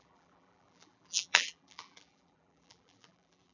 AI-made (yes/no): yes